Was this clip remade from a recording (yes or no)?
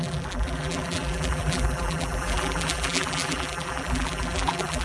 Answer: yes